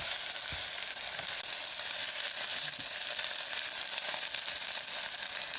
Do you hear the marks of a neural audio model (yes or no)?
yes